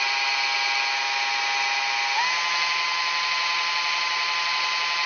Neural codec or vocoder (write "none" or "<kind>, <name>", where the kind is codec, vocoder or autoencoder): none